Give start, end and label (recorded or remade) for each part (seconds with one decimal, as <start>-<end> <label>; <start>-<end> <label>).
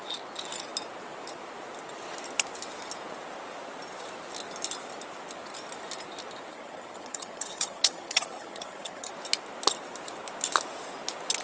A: 0.0-6.5 recorded; 6.5-9.1 remade; 9.1-11.4 recorded